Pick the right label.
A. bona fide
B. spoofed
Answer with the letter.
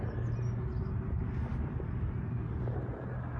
A